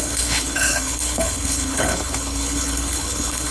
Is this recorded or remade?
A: remade